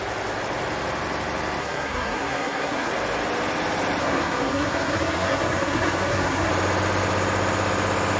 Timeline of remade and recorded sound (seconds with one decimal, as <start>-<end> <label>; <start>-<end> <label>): 0.0-1.6 recorded; 1.6-2.9 remade; 2.9-4.0 recorded; 4.0-6.5 remade; 6.5-8.2 recorded